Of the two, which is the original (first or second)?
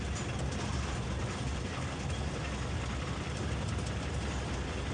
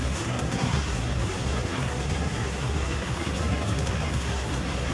first